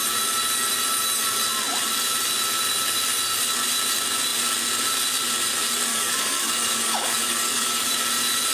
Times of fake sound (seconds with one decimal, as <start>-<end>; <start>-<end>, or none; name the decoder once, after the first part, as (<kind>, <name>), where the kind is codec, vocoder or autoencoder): 5.9-8.1 (codec, DAC)